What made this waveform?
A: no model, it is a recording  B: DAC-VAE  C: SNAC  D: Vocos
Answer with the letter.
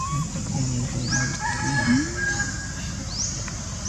A